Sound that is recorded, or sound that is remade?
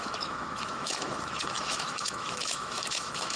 remade